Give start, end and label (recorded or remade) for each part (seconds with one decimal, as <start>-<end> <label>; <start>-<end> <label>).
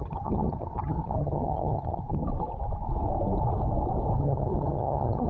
0.0-2.2 remade; 2.2-4.2 recorded; 4.2-5.3 remade